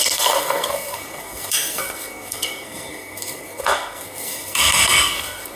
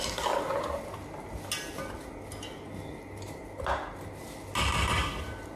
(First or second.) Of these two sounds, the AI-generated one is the first